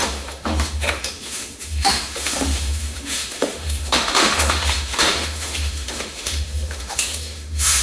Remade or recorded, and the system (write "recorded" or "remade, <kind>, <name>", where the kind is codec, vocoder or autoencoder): remade, autoencoder, DAC-VAE